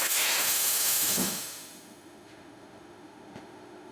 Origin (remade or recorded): remade